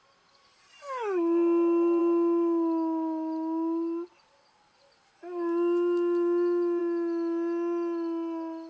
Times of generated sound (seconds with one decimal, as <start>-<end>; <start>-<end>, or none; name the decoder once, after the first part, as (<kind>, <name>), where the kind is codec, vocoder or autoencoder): none